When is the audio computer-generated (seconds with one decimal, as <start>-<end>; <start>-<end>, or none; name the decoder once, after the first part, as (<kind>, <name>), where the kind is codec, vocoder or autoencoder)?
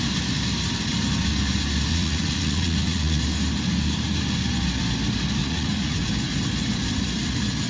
1.9-3.2 (vocoder, Vocos); 5.4-6.1